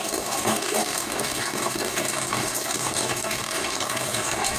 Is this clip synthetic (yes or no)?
yes